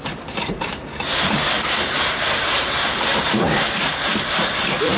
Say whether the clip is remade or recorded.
remade